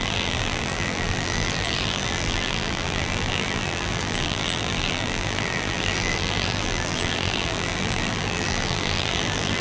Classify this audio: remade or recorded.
remade